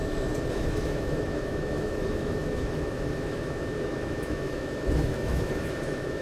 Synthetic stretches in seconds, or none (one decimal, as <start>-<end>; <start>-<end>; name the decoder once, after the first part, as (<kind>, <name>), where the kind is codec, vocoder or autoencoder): 0.5-6.2 (autoencoder, DAC-VAE)